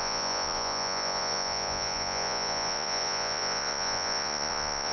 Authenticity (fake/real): fake